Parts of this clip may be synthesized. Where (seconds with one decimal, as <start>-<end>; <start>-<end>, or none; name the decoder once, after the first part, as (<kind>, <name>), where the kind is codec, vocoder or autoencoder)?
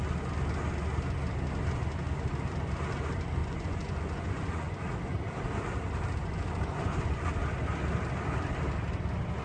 3.4-4.9 (vocoder, Vocos); 6.2-7.3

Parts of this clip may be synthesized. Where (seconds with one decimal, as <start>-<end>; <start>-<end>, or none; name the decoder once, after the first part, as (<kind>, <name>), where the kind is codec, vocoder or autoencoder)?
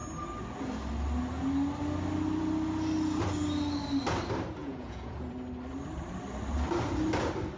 4.6-5.3 (vocoder, Vocos)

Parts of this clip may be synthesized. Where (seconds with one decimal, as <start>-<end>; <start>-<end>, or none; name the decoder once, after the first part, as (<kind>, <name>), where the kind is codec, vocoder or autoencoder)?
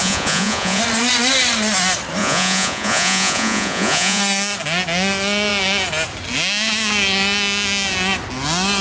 0.0-0.8 (vocoder, Vocos); 2.2-4.2